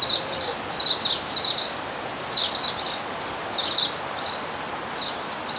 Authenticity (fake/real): real